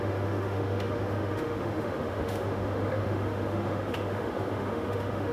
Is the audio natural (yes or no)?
no